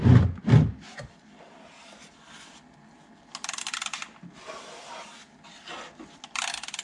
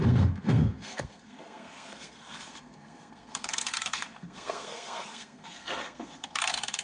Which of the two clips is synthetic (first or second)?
second